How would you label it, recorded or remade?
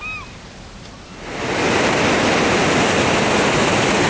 recorded